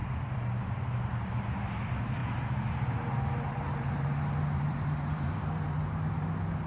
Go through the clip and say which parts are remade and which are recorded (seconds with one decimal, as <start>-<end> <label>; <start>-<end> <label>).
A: 0.0-6.7 remade